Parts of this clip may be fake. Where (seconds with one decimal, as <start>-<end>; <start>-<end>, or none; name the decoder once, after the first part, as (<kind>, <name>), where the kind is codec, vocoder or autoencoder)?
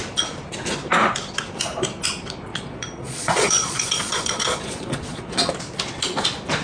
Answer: 2.5-5.5 (vocoder, Vocos)